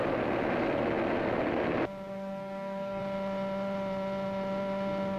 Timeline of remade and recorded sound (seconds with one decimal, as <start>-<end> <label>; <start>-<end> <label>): 0.0-2.1 recorded; 2.1-3.0 remade; 3.0-5.2 recorded